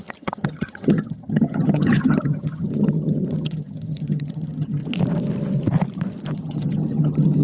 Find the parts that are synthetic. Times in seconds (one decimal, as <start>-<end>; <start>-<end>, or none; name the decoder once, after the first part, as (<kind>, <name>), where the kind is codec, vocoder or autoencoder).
0.0-4.8 (vocoder, HiFi-GAN); 6.3-7.4